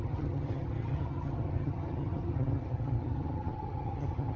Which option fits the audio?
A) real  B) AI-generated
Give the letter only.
B